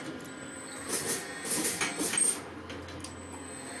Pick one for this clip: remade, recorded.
recorded